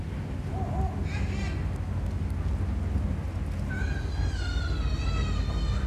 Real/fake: real